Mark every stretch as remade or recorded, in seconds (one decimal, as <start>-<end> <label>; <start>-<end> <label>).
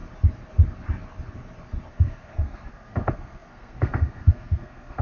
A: 0.0-1.9 recorded; 1.9-5.0 remade